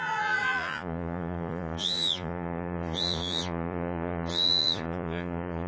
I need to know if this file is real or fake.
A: fake